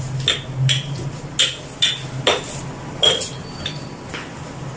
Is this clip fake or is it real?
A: real